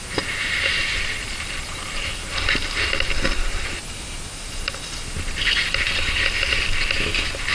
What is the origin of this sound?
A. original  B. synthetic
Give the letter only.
A